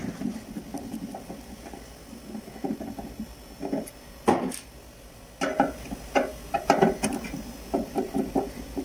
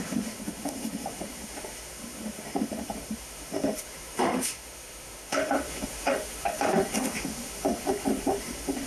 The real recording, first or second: first